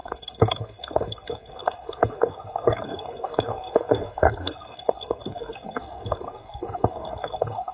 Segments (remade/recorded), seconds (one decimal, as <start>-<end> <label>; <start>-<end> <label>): 0.0-7.7 remade